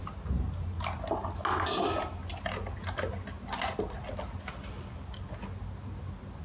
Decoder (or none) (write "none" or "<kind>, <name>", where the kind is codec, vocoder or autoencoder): none